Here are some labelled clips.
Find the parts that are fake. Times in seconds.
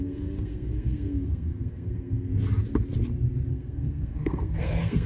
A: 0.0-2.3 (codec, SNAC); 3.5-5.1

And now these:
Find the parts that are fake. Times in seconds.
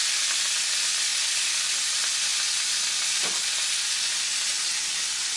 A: 1.1-1.7 (vocoder, BigVGAN v2)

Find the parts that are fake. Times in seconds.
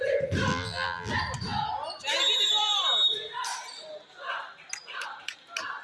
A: 0.5-1.1 (vocoder, BigVGAN v2)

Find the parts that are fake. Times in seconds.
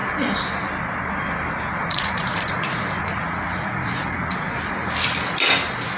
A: 1.8-4.5 (vocoder, Vocos)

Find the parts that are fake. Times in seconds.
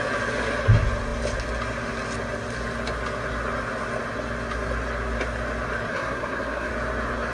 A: 5.9-6.7 (codec, SNAC)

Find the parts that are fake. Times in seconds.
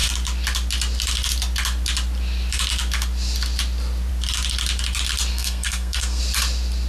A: 5.3-6.2 (codec, SNAC)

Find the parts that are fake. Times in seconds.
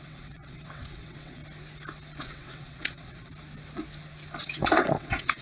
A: 0.0-1.4 (vocoder, WaveNeXt); 2.2-3.3; 4.4-5.4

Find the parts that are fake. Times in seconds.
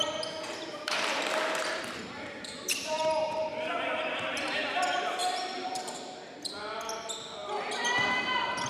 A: 0.7-4.4 (vocoder, BigVGAN v2); 5.2-5.9